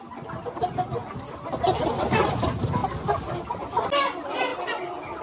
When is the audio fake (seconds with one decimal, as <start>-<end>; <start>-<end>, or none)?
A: none